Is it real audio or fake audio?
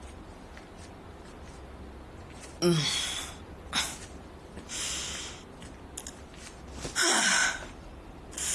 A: real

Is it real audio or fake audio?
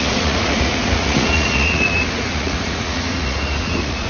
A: fake